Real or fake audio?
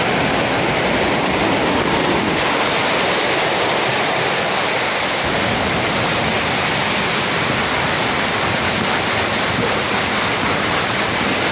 real